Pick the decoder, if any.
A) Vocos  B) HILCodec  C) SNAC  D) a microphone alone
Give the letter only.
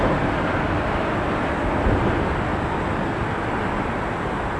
D